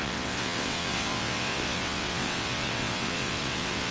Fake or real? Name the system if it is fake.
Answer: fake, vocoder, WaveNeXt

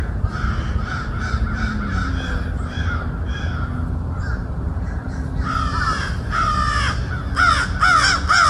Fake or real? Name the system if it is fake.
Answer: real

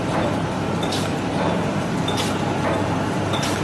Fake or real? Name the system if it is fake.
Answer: real